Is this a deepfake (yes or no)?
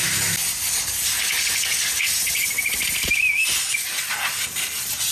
no